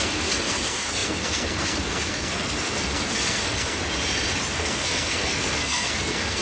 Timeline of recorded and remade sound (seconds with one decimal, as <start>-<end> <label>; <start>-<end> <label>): 0.0-3.8 remade; 3.8-4.5 recorded; 4.5-6.4 remade